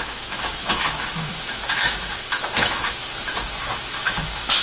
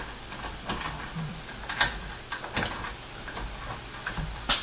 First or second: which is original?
second